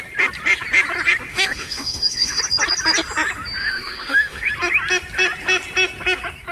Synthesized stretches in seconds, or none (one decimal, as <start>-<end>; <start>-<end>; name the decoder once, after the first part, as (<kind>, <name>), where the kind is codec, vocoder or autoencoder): 1.3-2.4 (autoencoder, DAC-VAE); 3.6-4.5